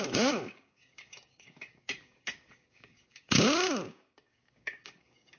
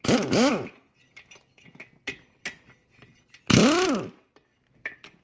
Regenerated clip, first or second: first